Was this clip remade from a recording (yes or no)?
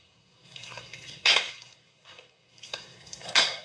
yes